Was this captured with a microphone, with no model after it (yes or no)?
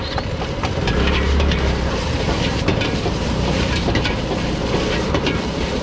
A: no